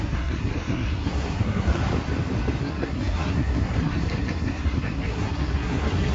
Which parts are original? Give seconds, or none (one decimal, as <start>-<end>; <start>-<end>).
1.8-2.6